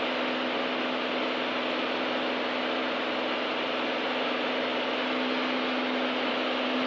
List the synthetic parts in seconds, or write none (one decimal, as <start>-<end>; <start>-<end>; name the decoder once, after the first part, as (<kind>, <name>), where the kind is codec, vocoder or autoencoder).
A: none